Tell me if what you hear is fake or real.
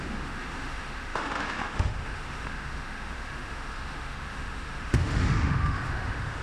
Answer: fake